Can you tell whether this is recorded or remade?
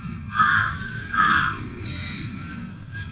remade